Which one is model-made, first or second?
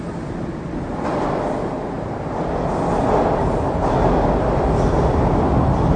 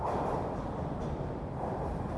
second